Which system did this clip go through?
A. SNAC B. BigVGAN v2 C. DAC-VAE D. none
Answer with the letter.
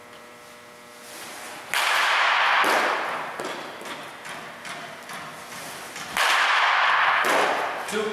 D